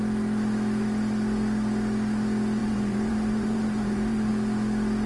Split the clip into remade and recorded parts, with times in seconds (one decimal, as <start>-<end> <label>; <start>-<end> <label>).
0.0-2.6 recorded; 2.6-4.3 remade; 4.3-5.1 recorded